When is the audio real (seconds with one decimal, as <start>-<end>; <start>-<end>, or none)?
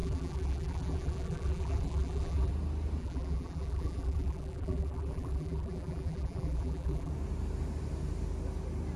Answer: 2.5-3.0; 7.1-9.0